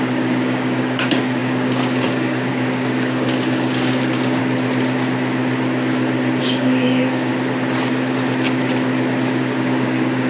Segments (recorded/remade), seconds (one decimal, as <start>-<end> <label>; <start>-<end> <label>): 0.0-4.4 remade; 4.4-6.4 recorded; 6.4-7.3 remade; 7.3-9.4 recorded; 9.4-10.3 remade